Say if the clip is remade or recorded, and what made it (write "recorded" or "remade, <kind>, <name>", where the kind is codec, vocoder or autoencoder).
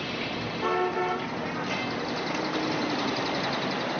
recorded